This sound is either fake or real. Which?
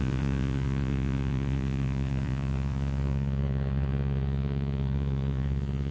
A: fake